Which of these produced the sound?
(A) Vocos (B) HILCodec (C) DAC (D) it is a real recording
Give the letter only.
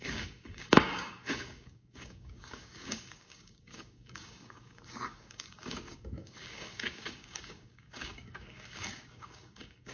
C